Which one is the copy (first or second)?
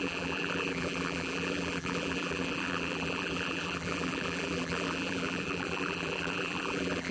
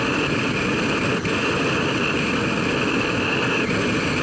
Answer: first